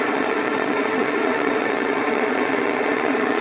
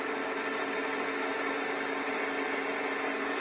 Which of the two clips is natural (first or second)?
second